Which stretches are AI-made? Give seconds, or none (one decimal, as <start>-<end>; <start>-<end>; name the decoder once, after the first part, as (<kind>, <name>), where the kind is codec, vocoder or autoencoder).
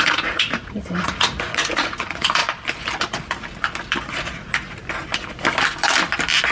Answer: 0.0-2.4 (vocoder, Vocos); 4.2-4.8